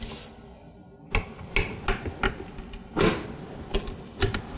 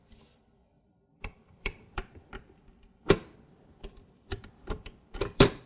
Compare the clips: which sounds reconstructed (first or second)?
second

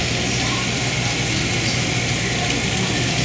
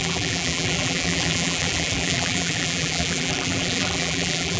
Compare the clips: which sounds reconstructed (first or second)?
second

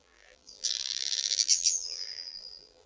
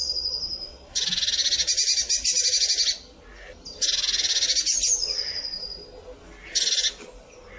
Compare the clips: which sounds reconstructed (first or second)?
first